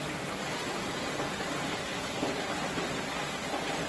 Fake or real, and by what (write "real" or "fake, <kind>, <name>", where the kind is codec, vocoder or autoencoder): real